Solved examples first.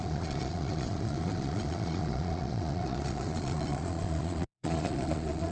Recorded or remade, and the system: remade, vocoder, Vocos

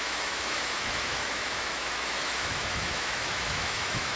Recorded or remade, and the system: remade, autoencoder, DAC-VAE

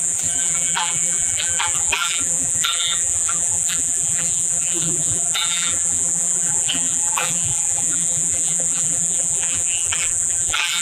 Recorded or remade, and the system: remade, vocoder, BigVGAN v2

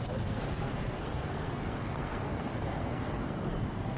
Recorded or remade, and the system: remade, codec, SNAC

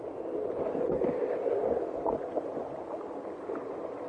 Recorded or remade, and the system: recorded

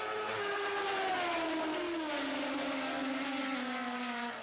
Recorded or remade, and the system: recorded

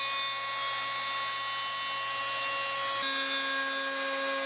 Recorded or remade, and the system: recorded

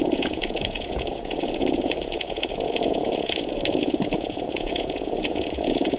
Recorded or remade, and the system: remade, vocoder, Vocos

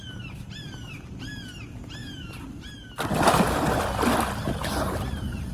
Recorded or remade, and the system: recorded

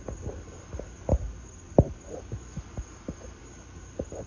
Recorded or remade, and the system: recorded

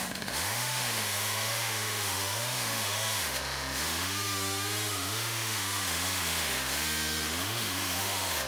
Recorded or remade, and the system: remade, autoencoder, DAC-VAE